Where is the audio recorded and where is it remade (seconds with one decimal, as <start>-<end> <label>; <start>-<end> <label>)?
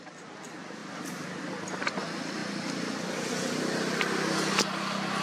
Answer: 0.0-5.2 recorded